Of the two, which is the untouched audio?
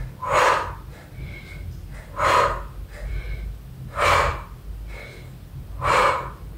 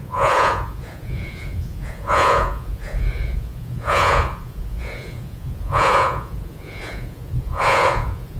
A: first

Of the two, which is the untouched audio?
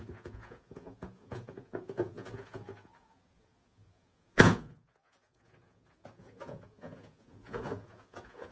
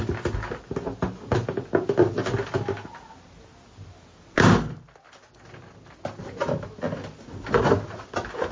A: second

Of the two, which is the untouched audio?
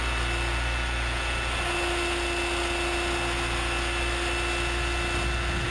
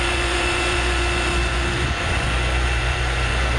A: first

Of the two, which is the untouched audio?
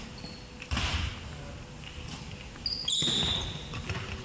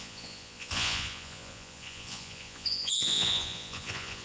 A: first